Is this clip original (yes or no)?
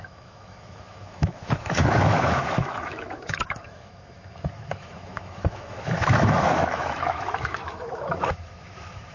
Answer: no